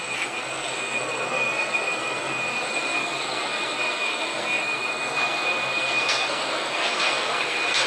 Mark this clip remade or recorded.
remade